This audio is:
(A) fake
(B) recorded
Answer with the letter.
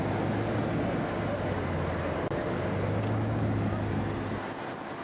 B